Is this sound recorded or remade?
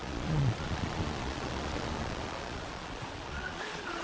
remade